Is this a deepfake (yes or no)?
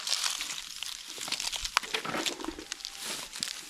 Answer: no